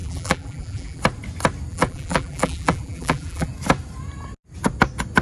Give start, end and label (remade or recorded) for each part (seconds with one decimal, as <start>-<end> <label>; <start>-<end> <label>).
0.0-1.0 remade; 1.0-1.7 recorded; 1.7-3.5 remade; 3.5-5.2 recorded